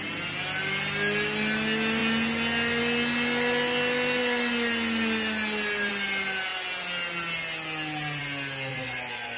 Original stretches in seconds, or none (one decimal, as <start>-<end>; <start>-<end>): 0.0-8.7